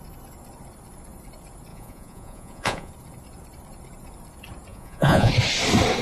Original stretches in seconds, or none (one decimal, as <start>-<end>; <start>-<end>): 0.0-1.7; 2.9-4.7; 5.3-6.0

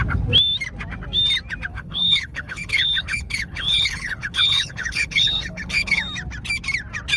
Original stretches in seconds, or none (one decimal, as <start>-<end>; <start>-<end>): 0.0-1.7; 6.0-7.2

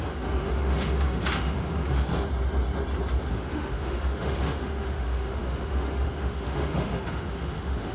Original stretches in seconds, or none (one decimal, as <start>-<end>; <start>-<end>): 2.1-3.3

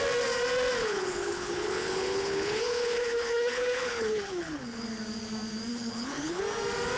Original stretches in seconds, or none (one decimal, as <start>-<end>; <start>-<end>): 0.0-0.8; 4.8-5.7; 6.4-7.0

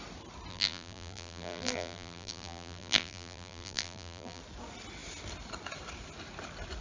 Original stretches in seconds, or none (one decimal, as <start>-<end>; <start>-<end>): 0.0-0.5; 4.4-6.8